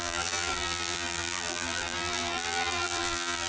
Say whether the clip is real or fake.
fake